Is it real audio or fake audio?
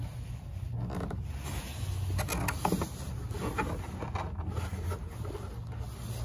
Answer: real